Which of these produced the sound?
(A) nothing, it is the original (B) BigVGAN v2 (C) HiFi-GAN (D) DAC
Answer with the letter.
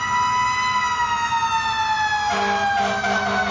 A